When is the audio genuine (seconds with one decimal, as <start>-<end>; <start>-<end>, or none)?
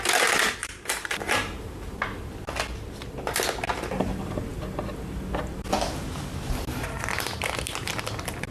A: 0.0-0.6; 2.0-8.5